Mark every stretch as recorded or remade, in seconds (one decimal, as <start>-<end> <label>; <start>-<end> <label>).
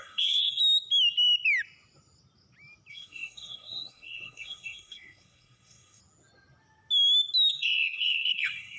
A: 0.0-0.6 remade; 0.6-2.9 recorded; 2.9-6.0 remade; 6.0-7.5 recorded; 7.5-8.8 remade